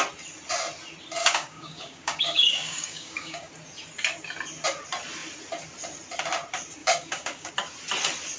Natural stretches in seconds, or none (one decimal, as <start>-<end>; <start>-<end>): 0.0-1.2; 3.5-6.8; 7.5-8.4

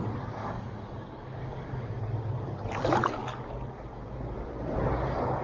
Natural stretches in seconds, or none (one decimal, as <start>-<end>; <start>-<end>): 0.0-0.4; 1.9-5.4

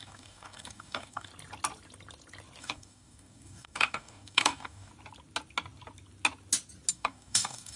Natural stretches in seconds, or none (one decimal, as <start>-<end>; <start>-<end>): 1.3-2.6; 4.9-6.9